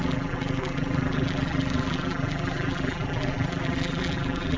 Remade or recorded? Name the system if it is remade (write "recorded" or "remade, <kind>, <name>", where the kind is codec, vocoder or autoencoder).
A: remade, vocoder, BigVGAN v2